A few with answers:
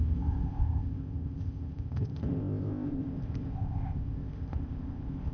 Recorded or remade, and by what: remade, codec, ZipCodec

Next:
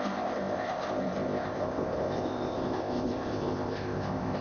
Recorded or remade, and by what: remade, codec, ZipCodec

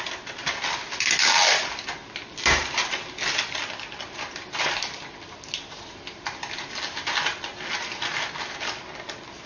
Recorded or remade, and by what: recorded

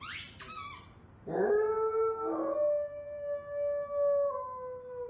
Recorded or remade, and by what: recorded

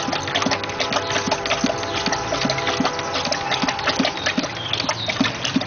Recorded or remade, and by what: recorded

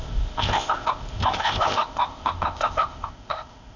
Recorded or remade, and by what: remade, codec, ZipCodec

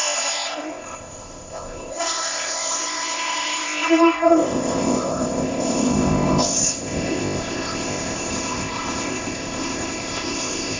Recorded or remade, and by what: remade, codec, ZipCodec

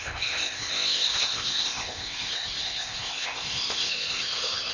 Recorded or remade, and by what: remade, codec, ZipCodec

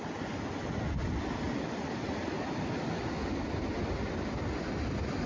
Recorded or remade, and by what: recorded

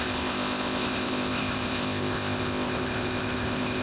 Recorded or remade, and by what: remade, codec, ZipCodec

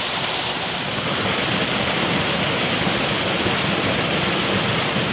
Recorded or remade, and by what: recorded